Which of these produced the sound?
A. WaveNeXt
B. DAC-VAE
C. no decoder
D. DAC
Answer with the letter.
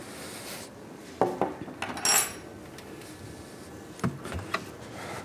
C